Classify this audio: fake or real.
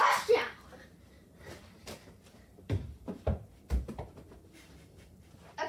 fake